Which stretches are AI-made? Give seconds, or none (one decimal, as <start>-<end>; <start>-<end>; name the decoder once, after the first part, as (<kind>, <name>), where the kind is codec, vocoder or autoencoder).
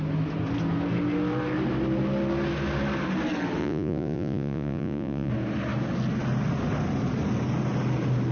3.6-5.3 (vocoder, Vocos)